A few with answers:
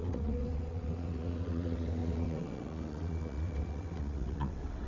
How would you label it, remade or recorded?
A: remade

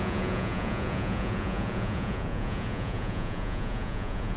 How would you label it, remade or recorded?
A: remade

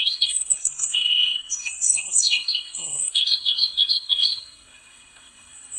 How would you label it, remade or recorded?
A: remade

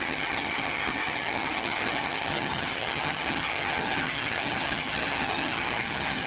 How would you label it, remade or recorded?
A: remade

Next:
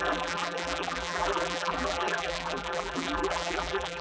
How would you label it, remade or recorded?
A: remade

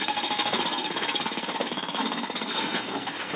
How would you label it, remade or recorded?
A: remade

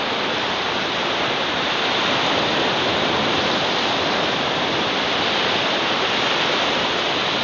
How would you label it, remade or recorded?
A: remade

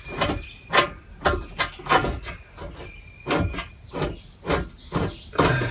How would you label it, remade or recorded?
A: recorded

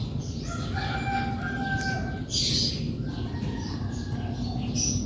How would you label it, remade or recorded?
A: recorded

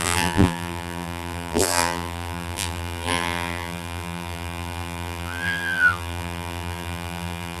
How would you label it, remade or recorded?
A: remade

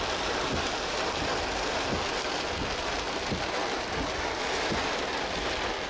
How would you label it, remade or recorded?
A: recorded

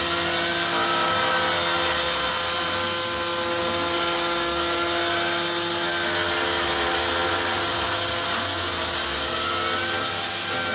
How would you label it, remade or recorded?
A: recorded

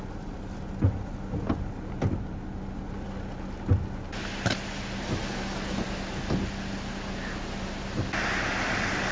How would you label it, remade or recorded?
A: recorded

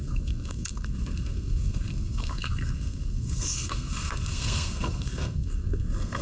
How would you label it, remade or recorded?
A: remade